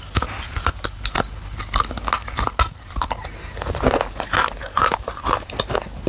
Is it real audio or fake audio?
real